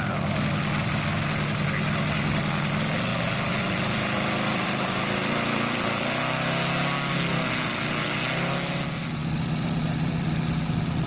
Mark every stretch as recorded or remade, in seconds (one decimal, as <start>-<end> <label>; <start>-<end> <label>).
0.0-3.1 recorded; 3.1-4.7 remade; 4.7-5.2 recorded; 5.2-6.2 remade; 6.2-9.2 recorded; 9.2-10.3 remade; 10.3-11.1 recorded